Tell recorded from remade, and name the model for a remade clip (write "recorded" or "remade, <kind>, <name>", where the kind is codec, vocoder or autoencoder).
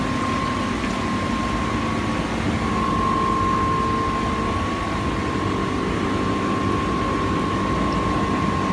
recorded